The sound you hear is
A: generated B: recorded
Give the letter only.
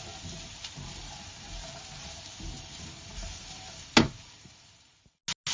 B